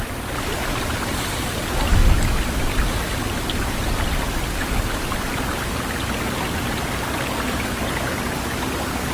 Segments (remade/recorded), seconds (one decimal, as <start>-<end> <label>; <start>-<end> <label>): 0.0-2.0 recorded; 2.0-6.0 remade; 6.0-9.1 recorded